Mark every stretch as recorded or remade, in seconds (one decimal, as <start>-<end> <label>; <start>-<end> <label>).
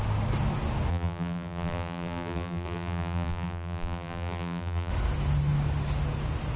0.0-0.9 recorded; 0.9-4.9 remade; 4.9-6.6 recorded